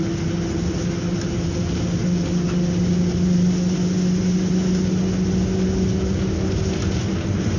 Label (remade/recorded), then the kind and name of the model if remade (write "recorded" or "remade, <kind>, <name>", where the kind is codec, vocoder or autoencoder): recorded